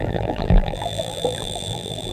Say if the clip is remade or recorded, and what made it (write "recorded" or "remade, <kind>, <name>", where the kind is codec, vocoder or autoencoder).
remade, vocoder, BigVGAN v2